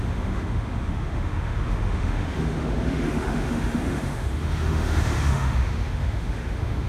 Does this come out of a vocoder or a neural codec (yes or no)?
yes